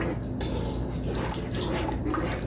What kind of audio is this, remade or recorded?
recorded